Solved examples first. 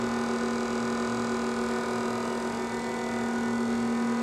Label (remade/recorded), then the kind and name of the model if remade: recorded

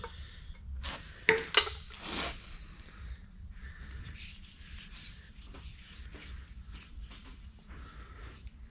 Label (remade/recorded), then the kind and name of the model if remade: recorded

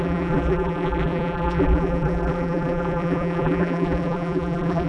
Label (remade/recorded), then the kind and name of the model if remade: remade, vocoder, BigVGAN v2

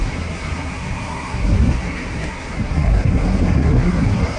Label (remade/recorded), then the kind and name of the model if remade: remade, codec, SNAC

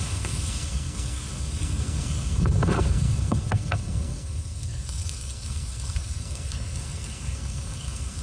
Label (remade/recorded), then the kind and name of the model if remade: remade, codec, SNAC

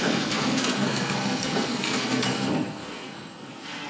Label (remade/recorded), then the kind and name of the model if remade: remade, codec, SNAC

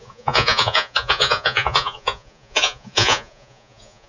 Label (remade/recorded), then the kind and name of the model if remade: remade, vocoder, Vocos